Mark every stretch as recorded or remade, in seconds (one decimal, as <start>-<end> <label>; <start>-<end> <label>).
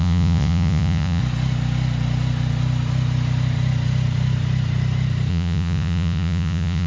0.0-1.2 remade; 1.2-5.3 recorded; 5.3-6.9 remade